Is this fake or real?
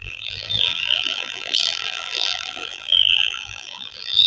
fake